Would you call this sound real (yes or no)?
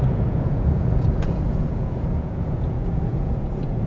no